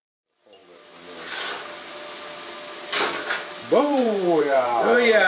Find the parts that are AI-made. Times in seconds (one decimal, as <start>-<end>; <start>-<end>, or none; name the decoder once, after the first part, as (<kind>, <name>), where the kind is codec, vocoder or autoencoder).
0.0-0.6 (vocoder, BigVGAN v2); 3.8-5.3